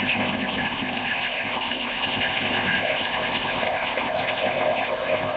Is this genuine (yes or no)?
no